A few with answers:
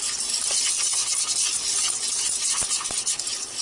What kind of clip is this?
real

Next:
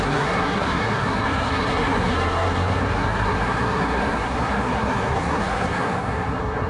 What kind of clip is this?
fake